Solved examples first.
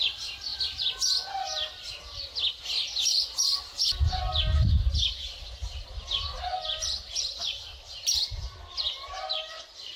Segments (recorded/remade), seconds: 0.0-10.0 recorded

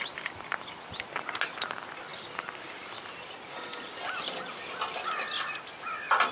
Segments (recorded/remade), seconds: 0.0-6.3 recorded

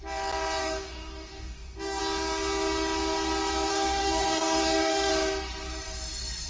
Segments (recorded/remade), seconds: 0.0-0.6 recorded; 0.6-2.0 remade; 2.0-3.7 recorded; 3.7-5.1 remade; 5.1-6.5 recorded

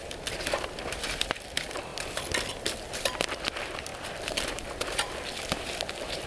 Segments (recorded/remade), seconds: 0.0-1.9 remade; 1.9-2.5 recorded; 2.5-6.3 remade

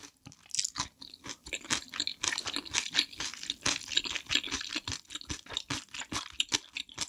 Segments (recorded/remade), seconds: 0.0-7.1 recorded

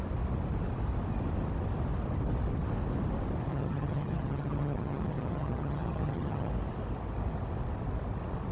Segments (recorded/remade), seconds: 0.0-3.5 recorded; 3.5-6.5 remade; 6.5-8.5 recorded